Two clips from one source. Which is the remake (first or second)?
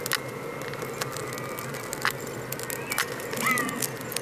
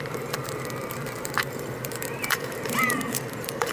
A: second